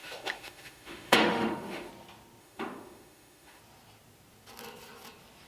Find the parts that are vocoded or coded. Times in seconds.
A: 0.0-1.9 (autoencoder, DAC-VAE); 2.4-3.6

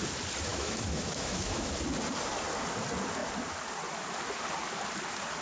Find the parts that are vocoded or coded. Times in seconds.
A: 0.5-1.7 (autoencoder, DAC-VAE)

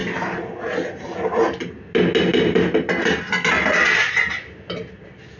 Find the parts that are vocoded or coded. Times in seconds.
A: none

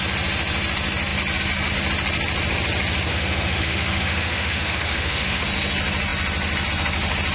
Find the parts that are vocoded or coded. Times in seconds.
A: 3.1-5.4 (autoencoder, DAC-VAE)

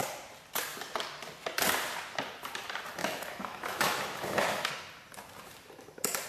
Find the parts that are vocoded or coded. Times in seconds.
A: 3.0-4.7 (autoencoder, DAC-VAE)